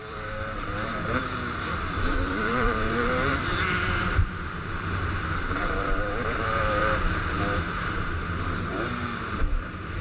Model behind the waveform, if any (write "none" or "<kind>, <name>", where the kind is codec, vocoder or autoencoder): vocoder, BigVGAN v2